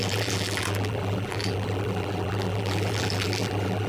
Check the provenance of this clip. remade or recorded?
remade